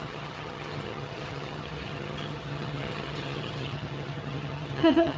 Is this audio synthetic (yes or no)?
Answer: yes